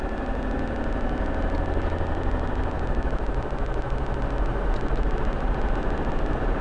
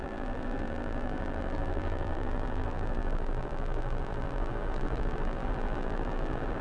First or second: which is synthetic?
second